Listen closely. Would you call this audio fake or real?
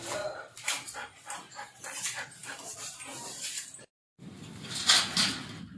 real